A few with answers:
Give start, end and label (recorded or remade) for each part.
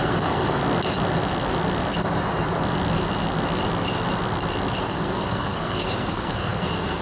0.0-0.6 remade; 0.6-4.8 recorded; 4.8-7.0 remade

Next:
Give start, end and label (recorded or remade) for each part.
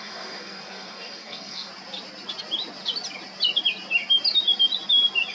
0.0-1.7 remade; 1.7-5.3 recorded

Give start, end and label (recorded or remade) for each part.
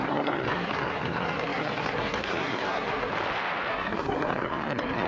0.0-3.1 remade; 3.1-3.7 recorded; 3.7-5.1 remade